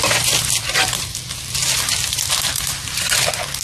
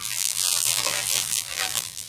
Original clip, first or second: first